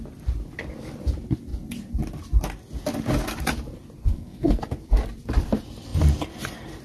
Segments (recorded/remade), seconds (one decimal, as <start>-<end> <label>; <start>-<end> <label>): 0.0-4.0 recorded; 4.0-4.6 remade; 4.6-6.8 recorded